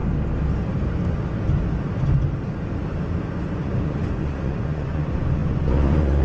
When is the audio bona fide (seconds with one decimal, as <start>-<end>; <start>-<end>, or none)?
0.0-3.4